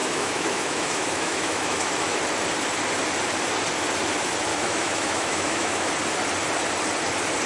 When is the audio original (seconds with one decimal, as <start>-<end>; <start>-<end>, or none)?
2.2-4.5; 5.9-7.5